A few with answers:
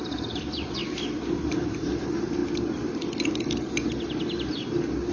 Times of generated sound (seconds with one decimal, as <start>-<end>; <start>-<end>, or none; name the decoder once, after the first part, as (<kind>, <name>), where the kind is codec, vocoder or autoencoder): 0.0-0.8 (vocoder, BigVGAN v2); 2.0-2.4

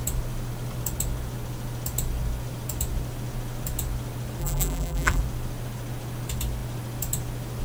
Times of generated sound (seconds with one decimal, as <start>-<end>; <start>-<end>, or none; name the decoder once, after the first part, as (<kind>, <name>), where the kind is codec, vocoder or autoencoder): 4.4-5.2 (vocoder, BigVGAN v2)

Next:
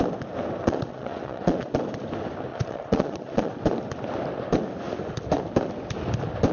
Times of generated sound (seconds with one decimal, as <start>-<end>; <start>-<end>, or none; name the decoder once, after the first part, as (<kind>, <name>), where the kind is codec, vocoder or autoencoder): 0.6-1.8 (vocoder, Vocos); 2.5-3.5

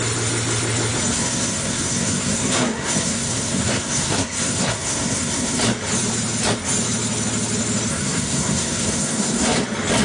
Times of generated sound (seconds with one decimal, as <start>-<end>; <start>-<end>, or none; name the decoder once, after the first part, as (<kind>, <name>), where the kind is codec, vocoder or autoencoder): 1.1-5.6 (codec, SNAC); 7.9-9.6

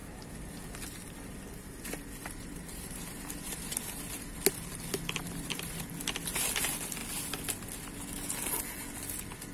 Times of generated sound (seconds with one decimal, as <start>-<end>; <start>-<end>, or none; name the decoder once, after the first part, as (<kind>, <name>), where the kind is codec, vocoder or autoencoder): 2.2-4.4 (vocoder, BigVGAN v2); 5.2-5.8

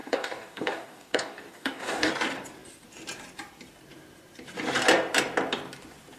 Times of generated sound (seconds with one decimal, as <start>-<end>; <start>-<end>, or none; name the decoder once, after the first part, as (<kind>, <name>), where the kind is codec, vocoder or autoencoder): 0.0-2.1 (codec, DAC)

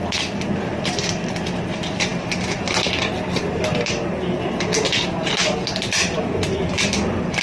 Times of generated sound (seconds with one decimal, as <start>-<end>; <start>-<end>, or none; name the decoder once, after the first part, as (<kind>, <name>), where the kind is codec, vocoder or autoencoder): none

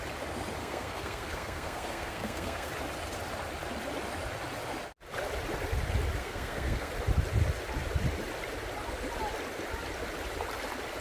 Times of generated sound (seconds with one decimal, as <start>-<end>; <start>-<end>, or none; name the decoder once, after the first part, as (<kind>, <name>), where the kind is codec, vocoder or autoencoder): 0.6-2.7 (codec, SNAC); 6.2-6.9